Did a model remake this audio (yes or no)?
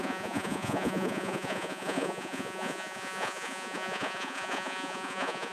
yes